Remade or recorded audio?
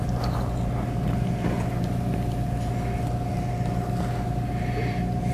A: recorded